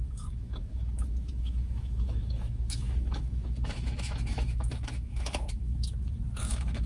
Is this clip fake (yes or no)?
yes